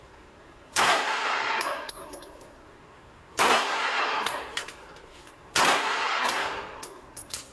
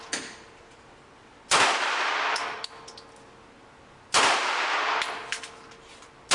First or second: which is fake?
first